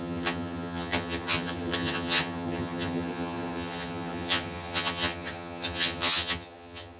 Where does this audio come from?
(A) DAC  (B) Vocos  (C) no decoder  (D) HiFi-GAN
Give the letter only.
D